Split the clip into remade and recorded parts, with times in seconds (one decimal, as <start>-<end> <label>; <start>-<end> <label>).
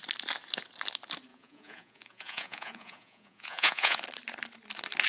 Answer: 0.0-1.3 recorded; 1.3-4.0 remade; 4.0-5.1 recorded